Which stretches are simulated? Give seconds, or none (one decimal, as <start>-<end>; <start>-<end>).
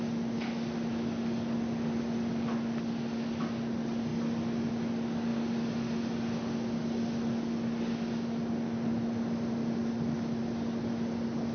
none